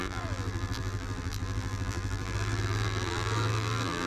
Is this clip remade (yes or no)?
yes